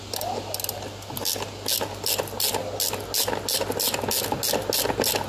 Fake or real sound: real